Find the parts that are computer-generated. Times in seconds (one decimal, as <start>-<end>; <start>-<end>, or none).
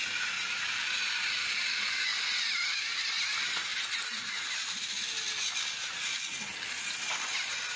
none